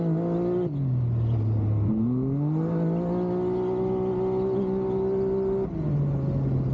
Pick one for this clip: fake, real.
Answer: real